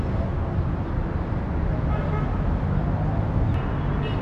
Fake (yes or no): no